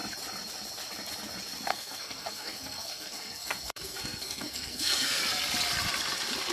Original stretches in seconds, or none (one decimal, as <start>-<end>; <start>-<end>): 0.0-1.7; 5.2-6.5